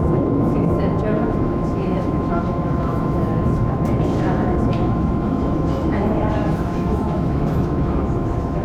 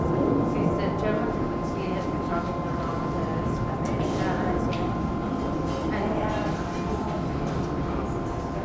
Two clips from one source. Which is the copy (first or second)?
first